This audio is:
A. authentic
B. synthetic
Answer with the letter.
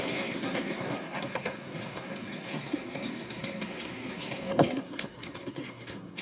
B